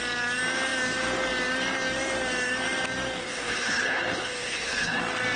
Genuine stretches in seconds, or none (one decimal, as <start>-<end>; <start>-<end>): 0.0-3.2; 5.0-5.4